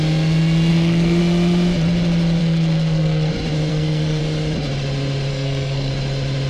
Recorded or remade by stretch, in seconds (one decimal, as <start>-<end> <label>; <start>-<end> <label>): 0.0-0.7 recorded; 0.7-1.2 remade; 1.2-2.4 recorded; 2.4-3.3 remade; 3.3-3.7 recorded; 3.7-4.2 remade; 4.2-5.3 recorded; 5.3-5.9 remade; 5.9-6.5 recorded